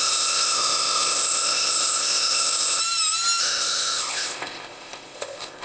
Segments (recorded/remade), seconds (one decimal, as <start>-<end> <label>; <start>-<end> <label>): 0.0-2.8 remade; 2.8-3.4 recorded; 3.4-5.6 remade